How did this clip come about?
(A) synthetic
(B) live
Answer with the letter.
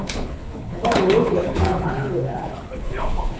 A